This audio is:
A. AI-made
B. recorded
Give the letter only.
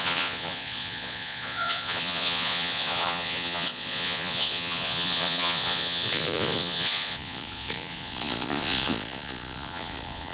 A